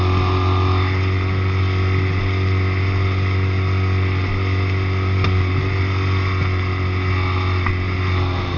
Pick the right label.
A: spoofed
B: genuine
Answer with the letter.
B